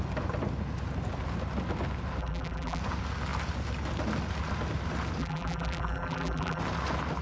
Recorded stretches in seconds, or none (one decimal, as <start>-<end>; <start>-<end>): 0.0-2.2; 2.8-5.2; 6.6-7.2